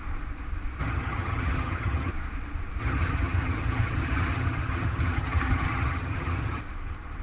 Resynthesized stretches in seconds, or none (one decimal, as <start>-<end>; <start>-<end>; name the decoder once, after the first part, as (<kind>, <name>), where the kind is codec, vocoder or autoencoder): 0.8-2.1 (vocoder, HiFi-GAN); 2.8-6.6